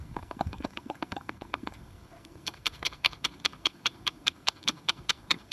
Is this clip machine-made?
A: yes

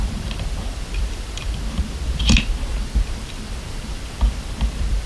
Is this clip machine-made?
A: yes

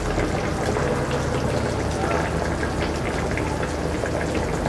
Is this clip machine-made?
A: no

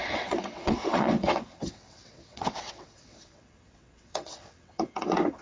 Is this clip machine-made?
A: yes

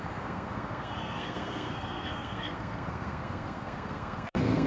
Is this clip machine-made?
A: yes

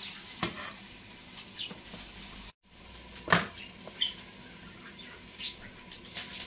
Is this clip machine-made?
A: no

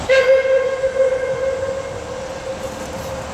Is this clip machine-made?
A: no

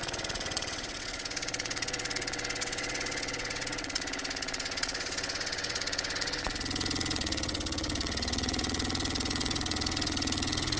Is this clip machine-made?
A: yes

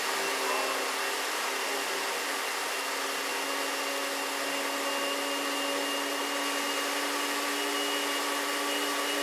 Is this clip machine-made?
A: no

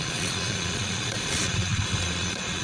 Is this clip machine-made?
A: yes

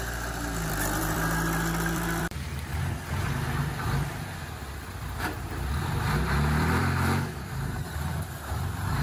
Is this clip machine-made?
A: yes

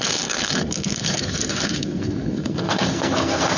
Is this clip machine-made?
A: yes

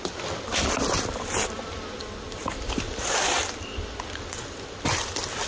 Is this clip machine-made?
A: no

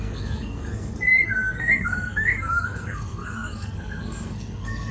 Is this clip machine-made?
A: yes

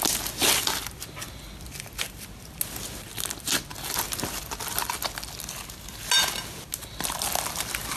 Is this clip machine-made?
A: no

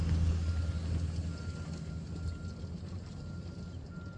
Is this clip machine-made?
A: no